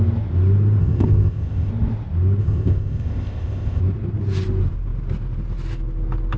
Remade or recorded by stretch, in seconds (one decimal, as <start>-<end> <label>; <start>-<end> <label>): 0.0-0.8 recorded; 0.8-1.7 remade; 1.7-2.4 recorded; 2.4-3.8 remade; 3.8-6.4 recorded